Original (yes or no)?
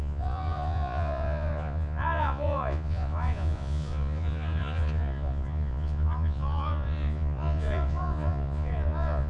no